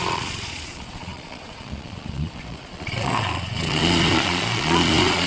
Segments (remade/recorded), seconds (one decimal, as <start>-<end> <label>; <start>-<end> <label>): 0.0-5.3 remade